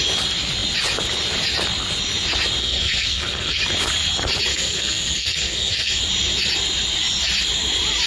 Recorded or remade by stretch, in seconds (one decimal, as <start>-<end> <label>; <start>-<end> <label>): 0.0-2.6 recorded; 2.6-3.6 remade; 3.6-4.5 recorded; 4.5-6.0 remade; 6.0-8.1 recorded